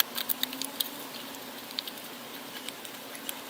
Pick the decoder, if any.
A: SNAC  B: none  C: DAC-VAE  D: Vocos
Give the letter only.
B